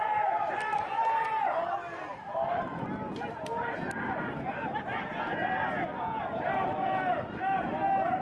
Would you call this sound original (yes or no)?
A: yes